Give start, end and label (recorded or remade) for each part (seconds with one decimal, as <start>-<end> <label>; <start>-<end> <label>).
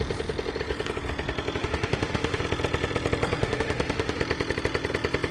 0.0-1.6 recorded; 1.6-2.4 remade; 2.4-3.4 recorded; 3.4-4.2 remade; 4.2-5.3 recorded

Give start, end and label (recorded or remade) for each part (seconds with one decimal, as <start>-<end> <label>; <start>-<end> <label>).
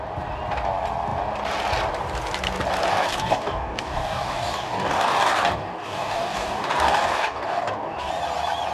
0.0-2.9 recorded; 2.9-8.1 remade; 8.1-8.7 recorded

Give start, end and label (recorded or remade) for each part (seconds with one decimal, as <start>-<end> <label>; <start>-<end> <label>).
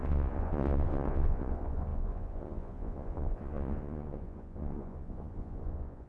0.0-6.1 remade